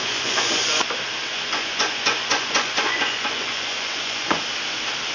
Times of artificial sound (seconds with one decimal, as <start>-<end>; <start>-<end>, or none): 0.0-0.9; 1.3-4.4